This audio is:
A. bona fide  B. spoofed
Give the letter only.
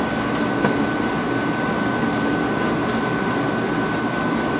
A